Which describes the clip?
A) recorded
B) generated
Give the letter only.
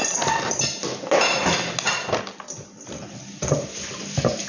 A